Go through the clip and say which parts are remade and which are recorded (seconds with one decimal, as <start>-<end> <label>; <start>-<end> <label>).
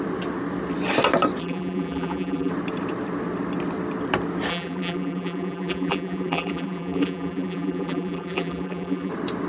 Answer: 0.0-1.4 recorded; 1.4-2.5 remade; 2.5-4.5 recorded; 4.5-9.1 remade; 9.1-9.5 recorded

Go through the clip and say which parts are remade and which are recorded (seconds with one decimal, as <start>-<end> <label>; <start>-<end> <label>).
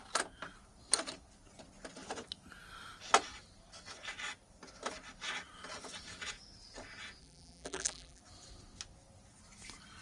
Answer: 0.0-7.2 recorded; 7.2-8.2 remade; 8.2-10.0 recorded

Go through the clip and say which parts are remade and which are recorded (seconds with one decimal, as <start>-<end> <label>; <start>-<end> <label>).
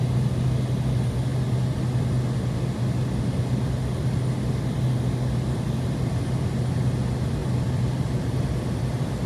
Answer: 0.0-9.3 recorded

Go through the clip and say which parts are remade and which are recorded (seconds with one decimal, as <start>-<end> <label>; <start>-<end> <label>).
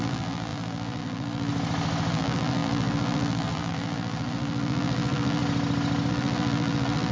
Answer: 0.0-1.5 remade; 1.5-2.1 recorded; 2.1-5.4 remade; 5.4-6.1 recorded; 6.1-7.1 remade